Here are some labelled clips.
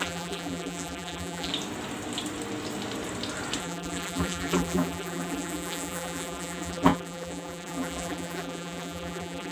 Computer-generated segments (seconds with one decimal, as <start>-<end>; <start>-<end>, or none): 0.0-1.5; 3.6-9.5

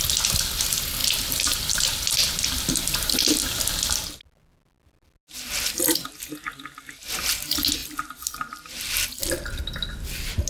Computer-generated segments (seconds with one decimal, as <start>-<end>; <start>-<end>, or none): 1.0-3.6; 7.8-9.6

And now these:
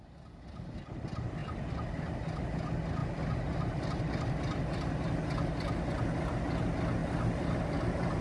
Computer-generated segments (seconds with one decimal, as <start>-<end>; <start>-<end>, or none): 1.4-2.0; 3.0-5.1; 7.0-8.2

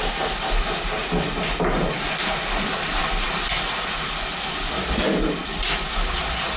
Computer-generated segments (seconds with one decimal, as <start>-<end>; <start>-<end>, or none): none

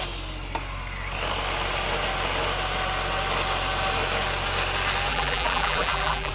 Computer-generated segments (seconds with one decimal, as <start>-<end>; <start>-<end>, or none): 5.1-6.3

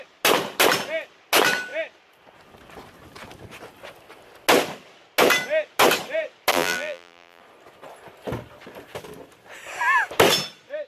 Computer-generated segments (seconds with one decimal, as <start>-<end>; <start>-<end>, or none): 6.5-7.4

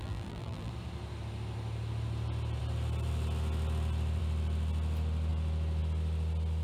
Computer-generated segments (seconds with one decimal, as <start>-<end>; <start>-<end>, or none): 0.0-0.7